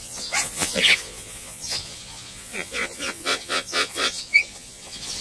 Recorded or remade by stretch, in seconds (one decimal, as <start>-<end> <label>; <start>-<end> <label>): 0.0-5.2 remade